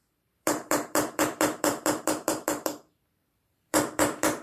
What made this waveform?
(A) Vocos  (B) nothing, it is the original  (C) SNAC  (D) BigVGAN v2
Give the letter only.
D